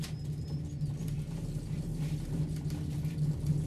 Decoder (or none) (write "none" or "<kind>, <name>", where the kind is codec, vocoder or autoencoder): none